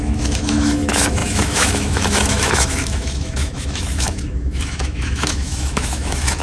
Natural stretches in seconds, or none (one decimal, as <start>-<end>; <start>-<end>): none